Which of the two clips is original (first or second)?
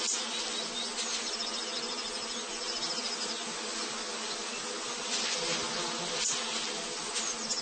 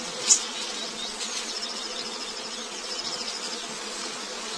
first